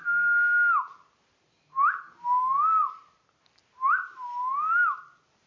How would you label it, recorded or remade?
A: recorded